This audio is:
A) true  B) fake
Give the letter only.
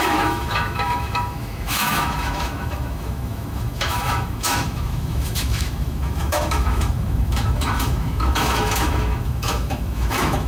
B